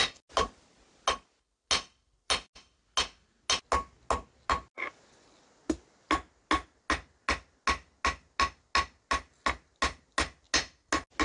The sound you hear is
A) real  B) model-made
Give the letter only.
A